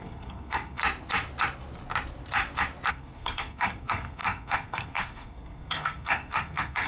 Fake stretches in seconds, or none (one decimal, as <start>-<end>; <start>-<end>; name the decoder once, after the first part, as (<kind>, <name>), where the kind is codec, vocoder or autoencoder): 0.0-0.8 (codec, SNAC); 2.9-6.9